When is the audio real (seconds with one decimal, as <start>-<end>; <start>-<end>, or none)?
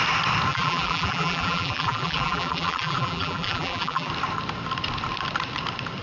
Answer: 0.0-0.5; 4.1-6.0